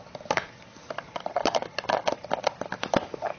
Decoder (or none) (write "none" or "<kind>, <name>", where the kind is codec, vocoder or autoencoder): none